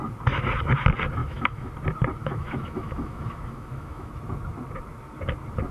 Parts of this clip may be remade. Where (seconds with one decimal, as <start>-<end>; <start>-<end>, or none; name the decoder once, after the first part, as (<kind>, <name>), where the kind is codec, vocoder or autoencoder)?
1.2-1.7 (autoencoder, DAC-VAE); 2.2-4.1

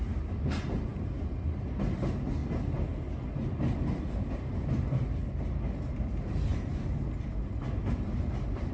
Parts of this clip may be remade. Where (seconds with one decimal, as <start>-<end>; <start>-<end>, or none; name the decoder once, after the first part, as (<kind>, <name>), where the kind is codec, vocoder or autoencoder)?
0.0-2.4 (vocoder, BigVGAN v2); 4.0-5.2; 5.9-6.5; 7.9-8.7